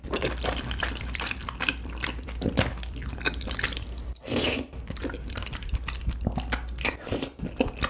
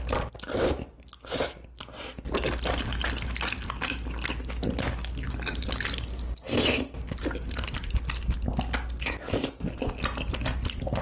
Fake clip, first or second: first